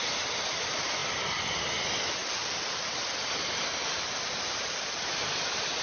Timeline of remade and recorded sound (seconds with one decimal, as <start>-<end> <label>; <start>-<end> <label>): 0.0-5.8 recorded